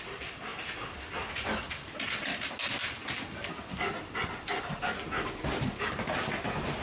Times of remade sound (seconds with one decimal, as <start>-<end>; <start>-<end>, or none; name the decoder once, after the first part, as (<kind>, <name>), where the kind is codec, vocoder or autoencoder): none